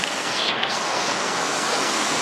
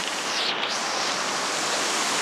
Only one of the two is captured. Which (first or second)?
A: second